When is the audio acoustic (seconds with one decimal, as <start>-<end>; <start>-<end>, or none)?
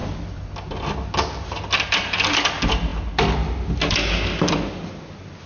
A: 0.0-5.5